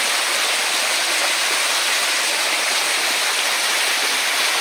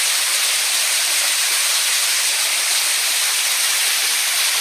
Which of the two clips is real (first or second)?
first